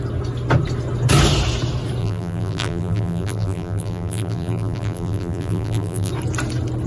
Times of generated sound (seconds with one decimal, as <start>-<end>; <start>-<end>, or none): 2.0-6.1